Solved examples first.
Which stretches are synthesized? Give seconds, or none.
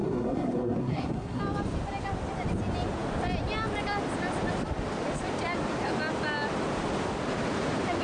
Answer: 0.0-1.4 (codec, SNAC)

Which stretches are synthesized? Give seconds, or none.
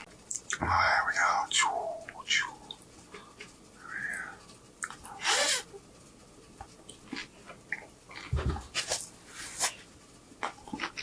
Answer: none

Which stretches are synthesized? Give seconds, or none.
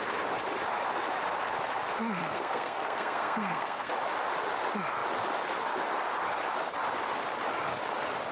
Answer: 2.2-3.9 (codec, SNAC)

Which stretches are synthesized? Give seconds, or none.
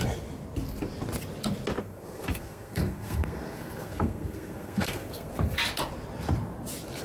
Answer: 1.8-5.3 (codec, SNAC)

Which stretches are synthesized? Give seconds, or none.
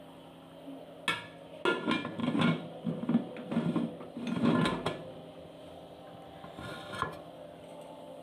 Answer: none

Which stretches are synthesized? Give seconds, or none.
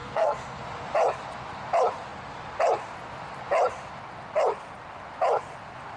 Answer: 0.0-0.6 (codec, SNAC)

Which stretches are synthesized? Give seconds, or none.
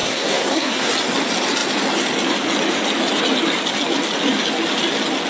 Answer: 0.0-0.9 (codec, SNAC)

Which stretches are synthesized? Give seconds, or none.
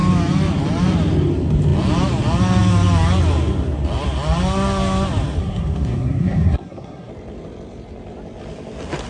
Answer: 5.4-7.1 (codec, SNAC)